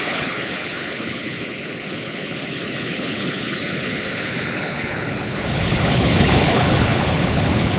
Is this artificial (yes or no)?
yes